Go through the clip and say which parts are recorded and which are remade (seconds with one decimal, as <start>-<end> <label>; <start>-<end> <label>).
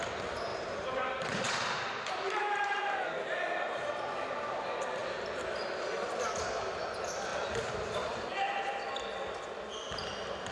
0.0-0.5 recorded; 0.5-2.8 remade; 2.8-7.3 recorded; 7.3-8.8 remade; 8.8-10.5 recorded